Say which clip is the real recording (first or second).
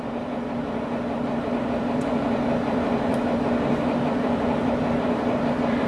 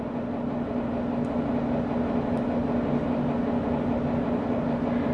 second